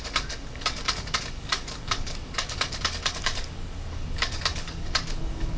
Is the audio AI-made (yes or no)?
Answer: yes